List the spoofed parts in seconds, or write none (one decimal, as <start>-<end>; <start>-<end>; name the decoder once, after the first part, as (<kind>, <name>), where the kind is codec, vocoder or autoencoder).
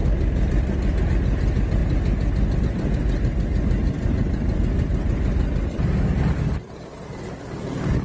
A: 0.0-1.0 (vocoder, BigVGAN v2); 3.8-4.6